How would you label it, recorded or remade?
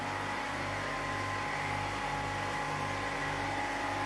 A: recorded